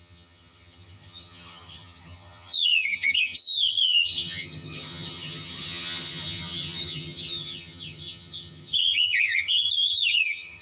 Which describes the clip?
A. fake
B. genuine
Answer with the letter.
A